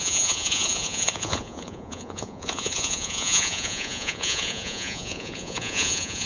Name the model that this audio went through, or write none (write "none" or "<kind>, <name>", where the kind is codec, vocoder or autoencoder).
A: vocoder, Vocos